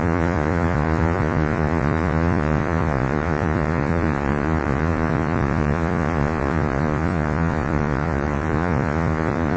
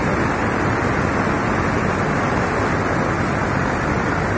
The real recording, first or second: second